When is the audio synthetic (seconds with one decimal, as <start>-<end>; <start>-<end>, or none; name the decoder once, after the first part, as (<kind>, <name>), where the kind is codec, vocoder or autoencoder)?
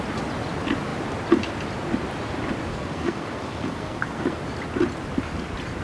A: 2.7-4.4 (codec, SNAC)